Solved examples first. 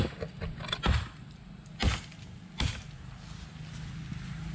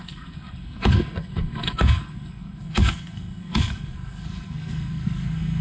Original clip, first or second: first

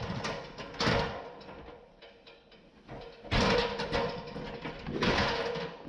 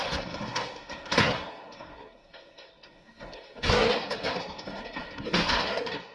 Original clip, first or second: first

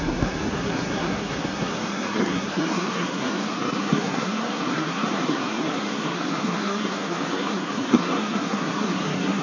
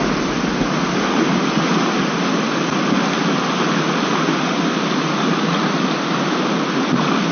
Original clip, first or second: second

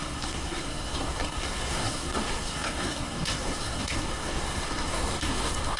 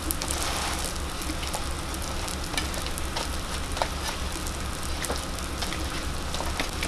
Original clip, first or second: second